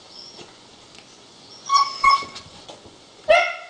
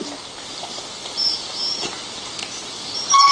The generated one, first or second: first